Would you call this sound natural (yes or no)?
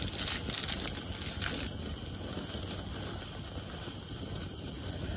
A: yes